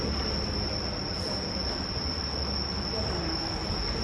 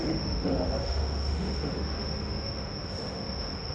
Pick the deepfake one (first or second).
second